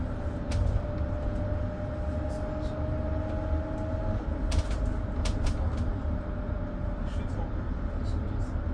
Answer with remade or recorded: recorded